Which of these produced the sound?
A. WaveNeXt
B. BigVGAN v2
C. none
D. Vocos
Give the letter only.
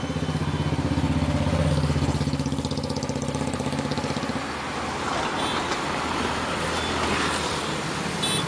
C